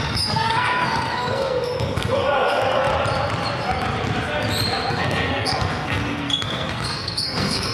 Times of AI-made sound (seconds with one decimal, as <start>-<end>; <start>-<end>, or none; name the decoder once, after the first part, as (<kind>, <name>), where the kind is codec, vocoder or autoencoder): 0.0-2.9 (codec, SNAC); 4.9-7.7